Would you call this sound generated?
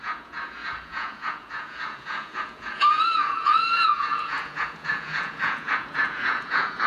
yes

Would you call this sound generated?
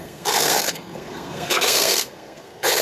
yes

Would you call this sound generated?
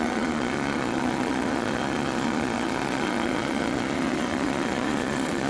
yes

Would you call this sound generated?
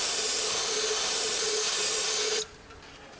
no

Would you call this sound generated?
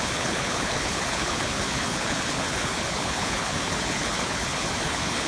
yes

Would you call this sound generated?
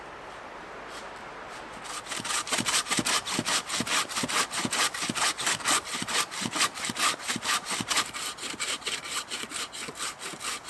no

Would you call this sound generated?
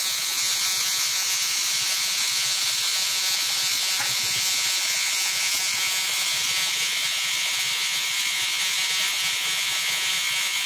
yes